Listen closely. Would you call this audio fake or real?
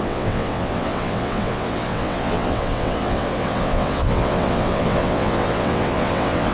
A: fake